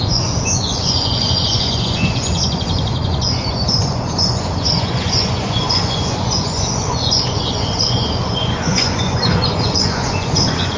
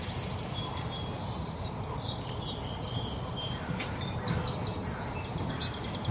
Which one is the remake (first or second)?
first